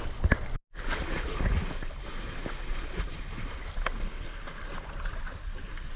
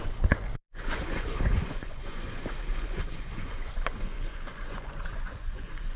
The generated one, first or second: second